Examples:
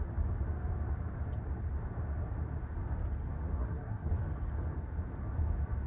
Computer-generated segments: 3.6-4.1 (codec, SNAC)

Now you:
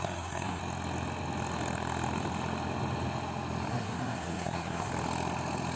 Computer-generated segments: 0.0-0.6 (codec, SNAC); 3.7-4.9

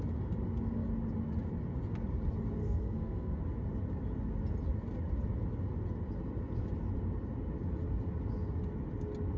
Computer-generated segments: 2.6-3.4 (codec, SNAC)